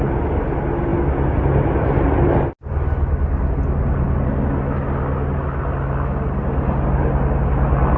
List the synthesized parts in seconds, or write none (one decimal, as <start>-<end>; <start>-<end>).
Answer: none